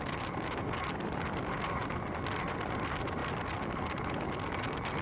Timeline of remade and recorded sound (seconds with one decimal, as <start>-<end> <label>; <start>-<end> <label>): 0.0-5.0 recorded